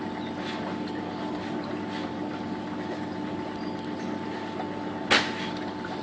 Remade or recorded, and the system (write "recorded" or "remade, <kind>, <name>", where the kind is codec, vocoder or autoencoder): recorded